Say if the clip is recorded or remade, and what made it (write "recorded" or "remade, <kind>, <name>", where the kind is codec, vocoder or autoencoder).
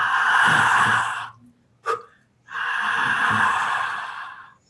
recorded